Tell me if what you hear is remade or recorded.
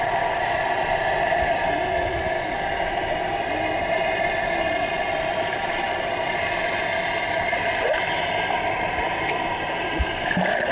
recorded